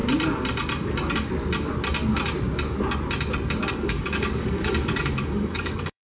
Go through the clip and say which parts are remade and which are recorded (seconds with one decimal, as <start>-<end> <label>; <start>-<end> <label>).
0.0-3.7 recorded; 3.7-6.1 remade